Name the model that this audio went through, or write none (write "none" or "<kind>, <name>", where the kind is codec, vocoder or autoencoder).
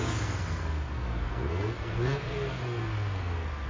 codec, SNAC